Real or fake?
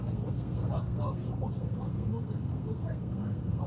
fake